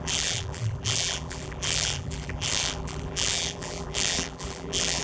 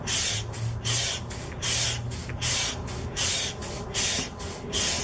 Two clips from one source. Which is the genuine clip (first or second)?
second